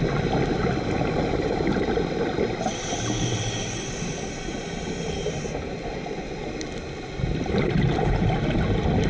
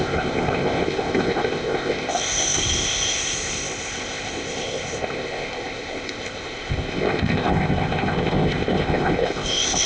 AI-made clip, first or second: second